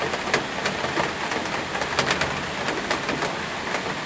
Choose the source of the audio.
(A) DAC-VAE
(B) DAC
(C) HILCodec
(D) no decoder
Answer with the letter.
D